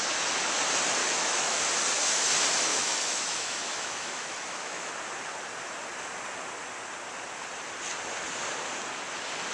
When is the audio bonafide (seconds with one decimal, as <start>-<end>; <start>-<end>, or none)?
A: 0.0-1.0; 1.6-2.7; 4.9-9.5